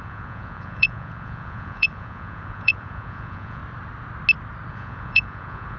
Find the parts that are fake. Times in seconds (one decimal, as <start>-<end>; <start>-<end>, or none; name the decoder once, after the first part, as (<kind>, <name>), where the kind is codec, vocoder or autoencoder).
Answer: 0.0-3.6 (vocoder, Vocos); 4.7-5.8